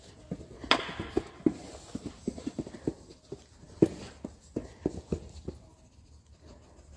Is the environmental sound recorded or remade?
recorded